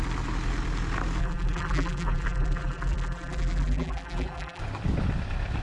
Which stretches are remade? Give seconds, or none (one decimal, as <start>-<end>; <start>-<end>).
1.2-4.6